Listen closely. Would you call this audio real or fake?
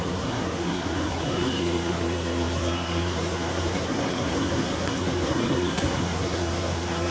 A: fake